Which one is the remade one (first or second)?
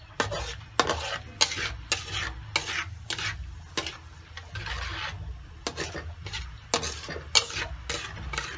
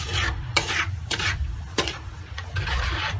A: second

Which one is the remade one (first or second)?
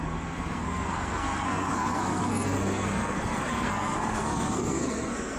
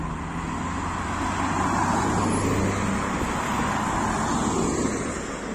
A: first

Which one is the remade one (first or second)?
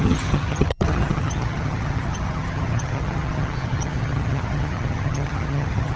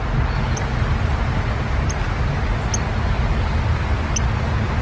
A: first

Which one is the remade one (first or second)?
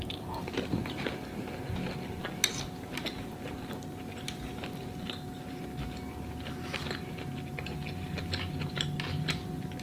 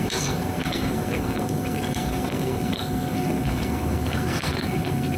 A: second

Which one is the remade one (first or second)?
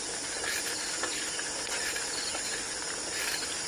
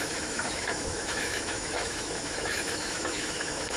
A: second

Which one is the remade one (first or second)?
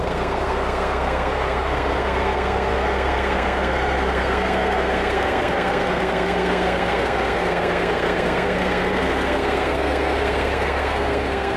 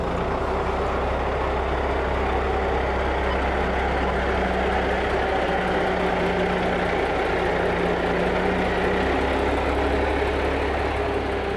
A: first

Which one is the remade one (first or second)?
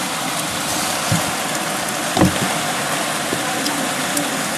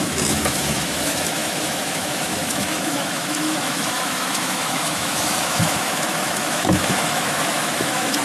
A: second